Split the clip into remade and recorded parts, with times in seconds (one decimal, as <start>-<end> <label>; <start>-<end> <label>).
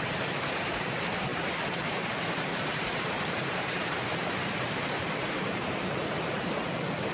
0.0-7.1 remade